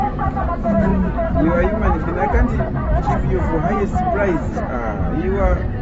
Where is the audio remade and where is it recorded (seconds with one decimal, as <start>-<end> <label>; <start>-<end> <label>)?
0.0-5.8 recorded